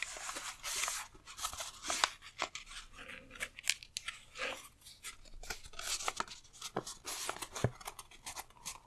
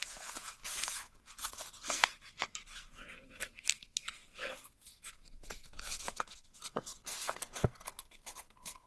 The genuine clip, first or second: first